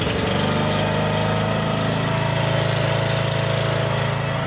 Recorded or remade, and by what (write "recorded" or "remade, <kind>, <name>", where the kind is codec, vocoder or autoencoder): recorded